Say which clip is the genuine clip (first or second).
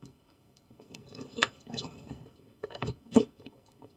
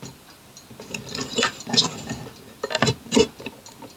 second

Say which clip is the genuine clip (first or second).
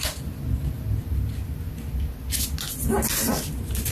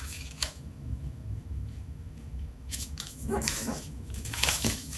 first